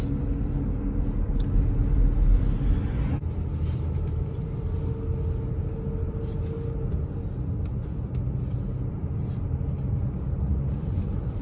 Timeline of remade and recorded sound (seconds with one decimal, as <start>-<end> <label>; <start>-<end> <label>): 0.0-10.5 recorded; 10.5-11.4 remade